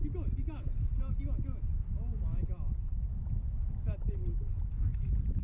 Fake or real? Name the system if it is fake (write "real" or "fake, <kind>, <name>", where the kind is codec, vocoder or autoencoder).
real